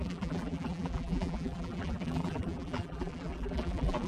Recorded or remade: remade